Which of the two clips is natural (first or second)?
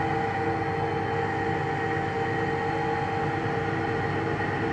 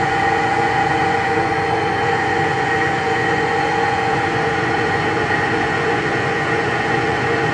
first